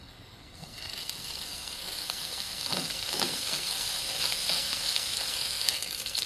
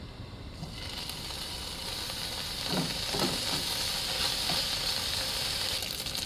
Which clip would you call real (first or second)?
second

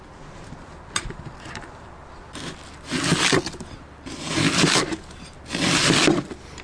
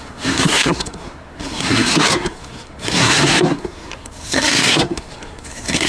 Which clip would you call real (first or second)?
first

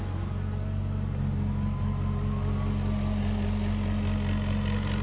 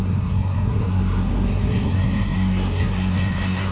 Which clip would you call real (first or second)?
first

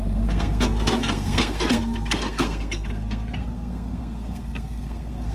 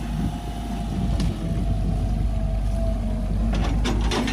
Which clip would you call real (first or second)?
second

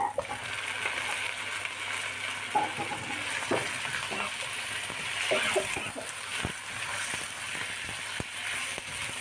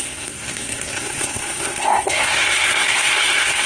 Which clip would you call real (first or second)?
first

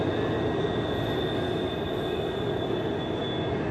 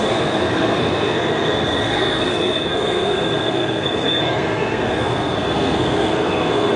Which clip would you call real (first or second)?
first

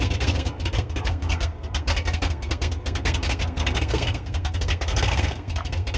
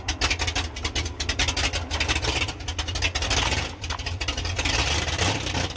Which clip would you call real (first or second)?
second